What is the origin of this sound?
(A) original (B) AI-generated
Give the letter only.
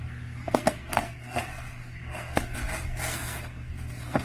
B